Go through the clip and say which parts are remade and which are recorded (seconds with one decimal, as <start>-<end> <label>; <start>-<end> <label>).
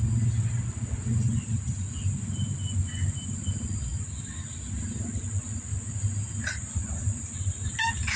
0.0-8.2 recorded